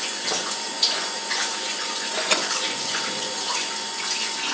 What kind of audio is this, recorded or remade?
remade